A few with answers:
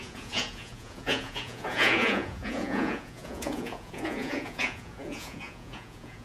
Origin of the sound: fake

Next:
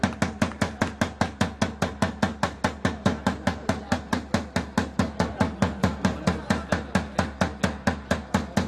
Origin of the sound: real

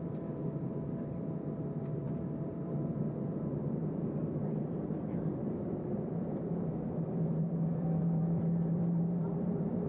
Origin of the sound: fake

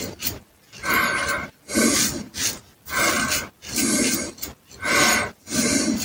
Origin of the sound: real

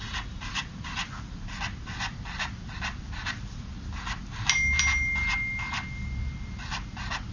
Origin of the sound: real